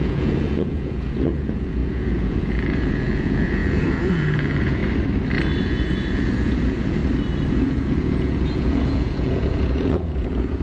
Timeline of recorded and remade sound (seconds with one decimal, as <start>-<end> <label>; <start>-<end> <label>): 0.0-4.8 remade; 4.8-5.6 recorded; 5.6-7.0 remade; 7.0-7.5 recorded; 7.5-10.6 remade